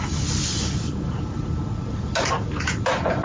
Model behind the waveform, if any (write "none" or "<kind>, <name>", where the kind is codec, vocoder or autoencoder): none